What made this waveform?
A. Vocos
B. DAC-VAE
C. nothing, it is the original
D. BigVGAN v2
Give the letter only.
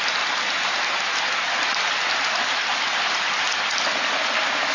C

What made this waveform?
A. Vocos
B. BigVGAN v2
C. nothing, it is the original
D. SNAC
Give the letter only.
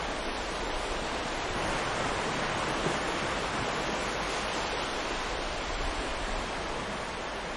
B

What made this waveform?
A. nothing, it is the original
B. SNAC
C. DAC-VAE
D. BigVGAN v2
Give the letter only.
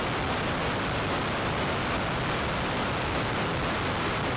A